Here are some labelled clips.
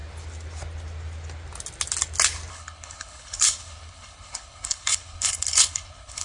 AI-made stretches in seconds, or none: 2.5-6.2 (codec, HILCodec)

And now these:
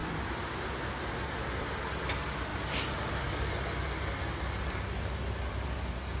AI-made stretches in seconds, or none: none

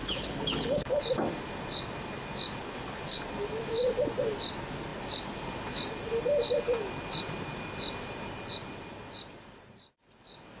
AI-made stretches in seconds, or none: 0.0-1.0 (codec, HILCodec); 2.6-3.2

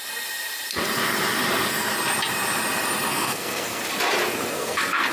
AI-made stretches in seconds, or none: 3.1-3.8 (codec, SNAC); 4.5-5.1

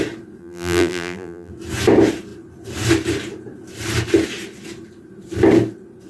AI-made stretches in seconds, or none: 0.4-1.5 (vocoder, BigVGAN v2)